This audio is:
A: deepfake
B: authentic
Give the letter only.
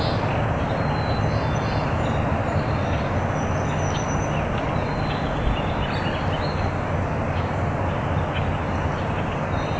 B